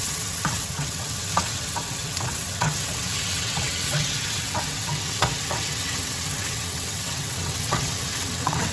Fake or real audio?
fake